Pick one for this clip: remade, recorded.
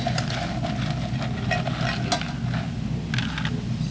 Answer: recorded